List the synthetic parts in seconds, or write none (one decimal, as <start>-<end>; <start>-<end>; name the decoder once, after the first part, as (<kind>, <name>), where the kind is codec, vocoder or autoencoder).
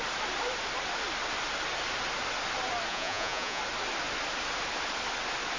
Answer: 2.9-3.6 (vocoder, Vocos)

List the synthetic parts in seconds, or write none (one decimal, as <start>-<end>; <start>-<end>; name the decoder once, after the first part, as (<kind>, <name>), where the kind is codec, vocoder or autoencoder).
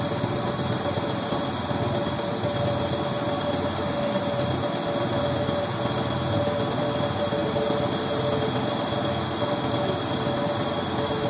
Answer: none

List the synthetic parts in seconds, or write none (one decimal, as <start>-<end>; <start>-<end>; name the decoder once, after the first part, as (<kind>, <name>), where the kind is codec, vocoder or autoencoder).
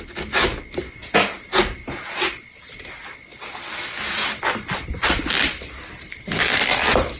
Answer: 1.0-2.1 (vocoder, Vocos)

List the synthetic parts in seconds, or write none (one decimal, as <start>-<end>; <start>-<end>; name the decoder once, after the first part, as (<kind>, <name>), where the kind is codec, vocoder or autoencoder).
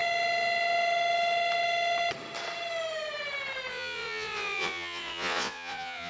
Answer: 3.7-6.1 (vocoder, Vocos)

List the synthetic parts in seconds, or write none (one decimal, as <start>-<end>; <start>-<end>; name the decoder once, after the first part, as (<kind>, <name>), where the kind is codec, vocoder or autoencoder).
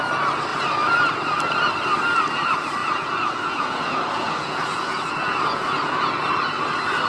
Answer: 2.8-6.1 (vocoder, Vocos)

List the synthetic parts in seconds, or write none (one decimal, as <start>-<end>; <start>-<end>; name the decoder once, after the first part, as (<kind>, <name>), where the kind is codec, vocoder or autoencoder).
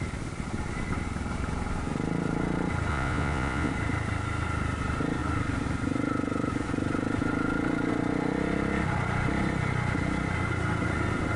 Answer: 2.9-3.7 (vocoder, Vocos)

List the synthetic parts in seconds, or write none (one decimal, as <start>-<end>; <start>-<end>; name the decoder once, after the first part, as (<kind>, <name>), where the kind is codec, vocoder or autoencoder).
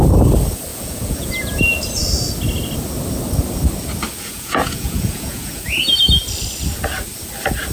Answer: 0.7-1.3 (vocoder, Vocos); 4.3-5.6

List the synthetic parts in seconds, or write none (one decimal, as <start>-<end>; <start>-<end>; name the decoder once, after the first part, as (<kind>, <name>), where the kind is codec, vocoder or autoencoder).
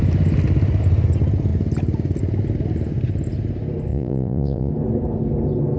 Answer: 3.9-4.7 (vocoder, Vocos)